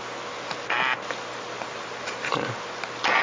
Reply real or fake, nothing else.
real